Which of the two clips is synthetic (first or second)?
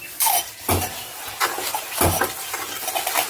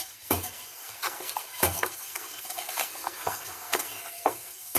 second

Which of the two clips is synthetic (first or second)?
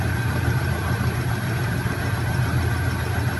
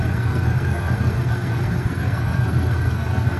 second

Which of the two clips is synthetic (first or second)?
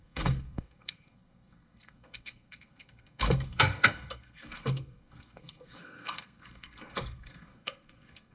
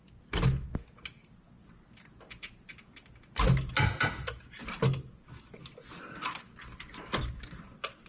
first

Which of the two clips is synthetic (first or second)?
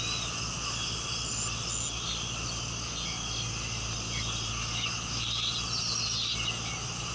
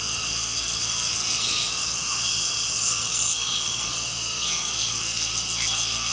second